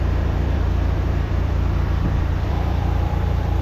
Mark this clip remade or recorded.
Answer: remade